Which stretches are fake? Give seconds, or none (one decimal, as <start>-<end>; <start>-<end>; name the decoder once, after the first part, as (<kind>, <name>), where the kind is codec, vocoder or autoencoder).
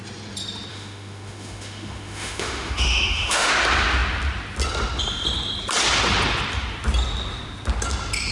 0.7-3.5 (autoencoder, DAC-VAE)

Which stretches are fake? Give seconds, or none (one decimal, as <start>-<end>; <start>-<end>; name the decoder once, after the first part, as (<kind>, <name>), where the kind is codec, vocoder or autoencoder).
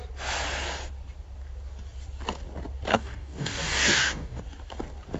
2.9-4.4 (codec, DAC)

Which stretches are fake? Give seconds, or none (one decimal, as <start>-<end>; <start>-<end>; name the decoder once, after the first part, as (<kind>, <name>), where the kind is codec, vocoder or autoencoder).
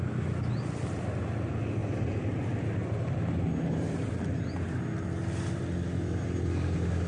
none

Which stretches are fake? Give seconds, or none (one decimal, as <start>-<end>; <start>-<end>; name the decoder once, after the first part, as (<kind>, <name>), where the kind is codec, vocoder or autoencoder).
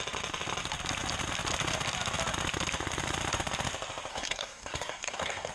4.1-5.5 (codec, SNAC)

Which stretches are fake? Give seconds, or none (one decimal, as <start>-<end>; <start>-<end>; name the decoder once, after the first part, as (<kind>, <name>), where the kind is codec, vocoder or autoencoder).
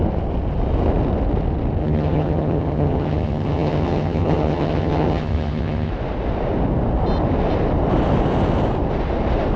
1.8-5.9 (vocoder, HiFi-GAN)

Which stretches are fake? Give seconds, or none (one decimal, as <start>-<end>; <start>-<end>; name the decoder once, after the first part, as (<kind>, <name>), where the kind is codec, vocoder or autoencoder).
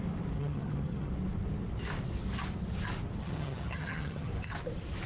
0.4-1.1 (vocoder, HiFi-GAN); 3.2-4.3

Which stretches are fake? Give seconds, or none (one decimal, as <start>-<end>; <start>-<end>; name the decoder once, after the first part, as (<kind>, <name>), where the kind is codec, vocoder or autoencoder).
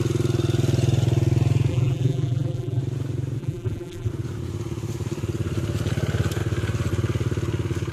1.7-2.8 (vocoder, BigVGAN v2); 3.4-4.1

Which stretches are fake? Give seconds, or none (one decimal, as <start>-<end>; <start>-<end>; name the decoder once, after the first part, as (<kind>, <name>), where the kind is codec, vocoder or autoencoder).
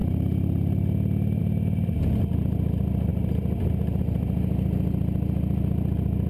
none